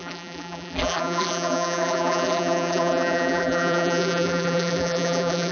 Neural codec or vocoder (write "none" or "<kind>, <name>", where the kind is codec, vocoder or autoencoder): vocoder, BigVGAN v2